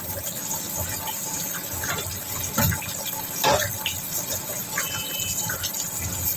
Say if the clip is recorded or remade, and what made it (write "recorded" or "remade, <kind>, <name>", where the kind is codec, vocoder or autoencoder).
recorded